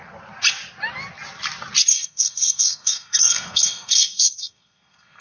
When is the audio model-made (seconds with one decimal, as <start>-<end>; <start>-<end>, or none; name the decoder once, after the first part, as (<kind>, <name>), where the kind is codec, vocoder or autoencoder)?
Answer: 1.9-5.2 (codec, SNAC)